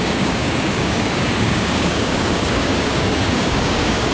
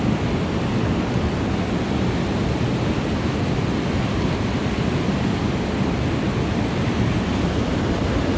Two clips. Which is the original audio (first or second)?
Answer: second